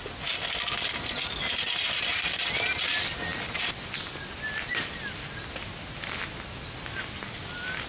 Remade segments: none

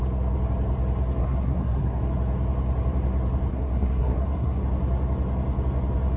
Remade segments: 1.2-2.0 (codec, SNAC); 3.5-4.6

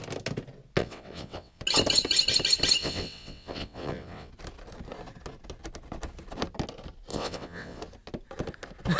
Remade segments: 0.8-1.6 (vocoder, WaveNeXt); 2.8-4.3; 7.1-7.8

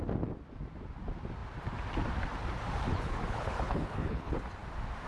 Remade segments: 2.9-4.3 (codec, HILCodec)

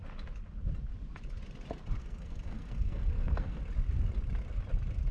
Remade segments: 2.0-3.6 (codec, SNAC)

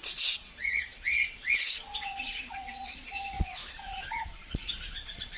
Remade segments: 0.0-5.4 (vocoder, Vocos)